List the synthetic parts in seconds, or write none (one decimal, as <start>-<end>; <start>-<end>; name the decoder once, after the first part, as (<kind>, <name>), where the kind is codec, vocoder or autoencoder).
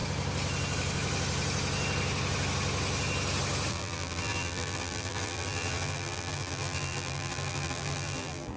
3.7-8.6 (vocoder, BigVGAN v2)